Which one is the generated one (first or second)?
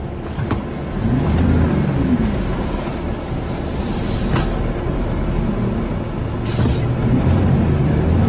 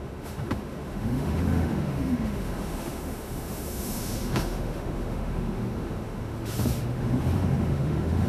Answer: second